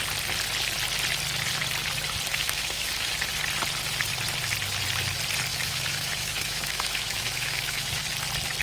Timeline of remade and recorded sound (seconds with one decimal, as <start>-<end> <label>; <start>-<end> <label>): 0.0-2.3 recorded; 2.3-3.1 remade; 3.1-5.5 recorded; 5.5-8.0 remade; 8.0-8.6 recorded